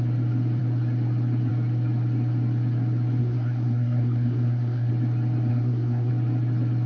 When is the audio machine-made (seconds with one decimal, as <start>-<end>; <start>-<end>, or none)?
3.2-4.9; 5.5-6.1